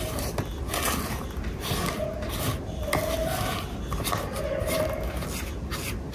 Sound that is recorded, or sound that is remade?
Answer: recorded